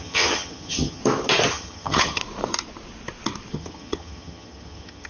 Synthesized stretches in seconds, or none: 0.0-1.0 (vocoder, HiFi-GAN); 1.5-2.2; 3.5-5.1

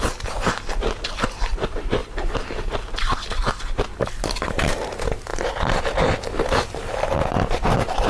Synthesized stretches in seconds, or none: none

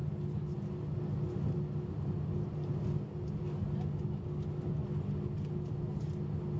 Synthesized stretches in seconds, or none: none

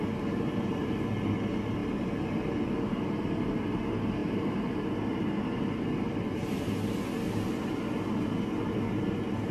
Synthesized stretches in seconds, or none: none

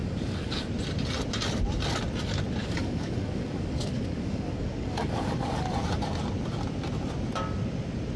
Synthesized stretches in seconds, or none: 0.0-0.7 (codec, DAC); 2.6-5.7

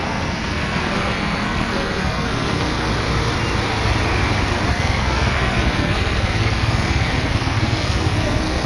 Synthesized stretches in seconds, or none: 0.0-2.9 (codec, SNAC); 4.7-8.7

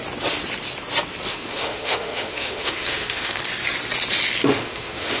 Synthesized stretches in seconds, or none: 1.3-3.4 (autoencoder, DAC-VAE); 4.4-5.2

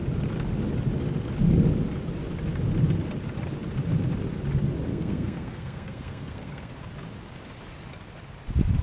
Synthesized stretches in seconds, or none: 4.9-6.8 (codec, SNAC)